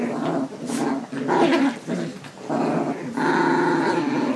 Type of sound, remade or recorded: recorded